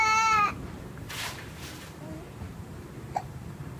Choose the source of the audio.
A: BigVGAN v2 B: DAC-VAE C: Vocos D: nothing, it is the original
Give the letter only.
A